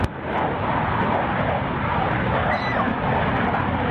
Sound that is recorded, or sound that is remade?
recorded